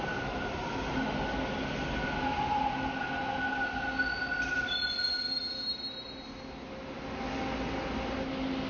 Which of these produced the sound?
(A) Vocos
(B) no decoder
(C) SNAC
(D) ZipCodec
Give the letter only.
B